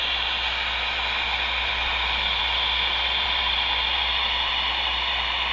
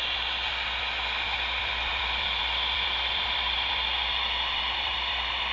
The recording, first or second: first